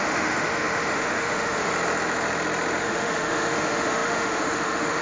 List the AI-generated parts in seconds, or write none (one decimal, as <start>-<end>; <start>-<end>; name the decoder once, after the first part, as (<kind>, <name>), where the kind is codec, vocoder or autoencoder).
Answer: 0.0-1.7 (autoencoder, DAC-VAE); 2.8-5.0